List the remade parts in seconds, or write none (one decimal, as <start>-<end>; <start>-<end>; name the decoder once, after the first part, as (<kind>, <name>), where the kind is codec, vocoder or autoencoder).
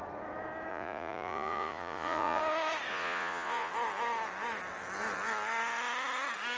0.7-2.4 (vocoder, Vocos); 2.9-3.7